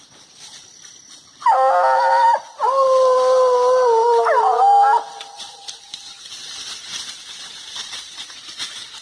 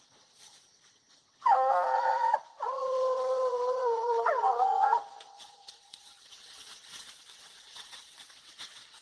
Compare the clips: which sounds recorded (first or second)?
first